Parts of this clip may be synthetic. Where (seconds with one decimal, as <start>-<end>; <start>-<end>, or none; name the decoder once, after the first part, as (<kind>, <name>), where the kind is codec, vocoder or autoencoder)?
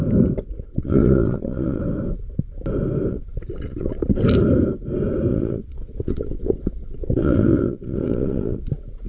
0.7-1.8 (vocoder, WaveNeXt); 3.1-4.0; 5.3-8.7